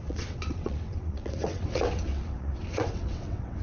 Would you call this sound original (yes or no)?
no